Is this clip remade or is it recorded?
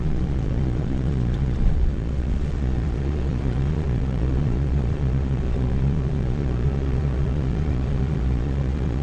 remade